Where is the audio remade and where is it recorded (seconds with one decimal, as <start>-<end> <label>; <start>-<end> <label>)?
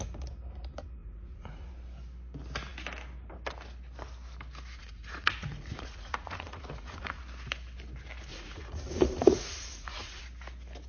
0.0-1.0 recorded; 1.0-1.7 remade; 1.7-4.8 recorded; 4.8-7.2 remade; 7.2-8.3 recorded; 8.3-10.2 remade; 10.2-10.9 recorded